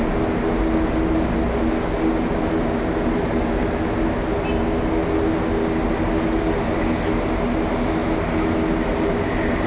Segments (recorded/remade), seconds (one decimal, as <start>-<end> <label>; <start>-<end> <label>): 0.0-9.7 recorded